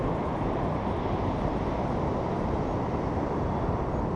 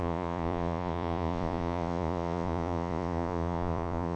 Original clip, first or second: first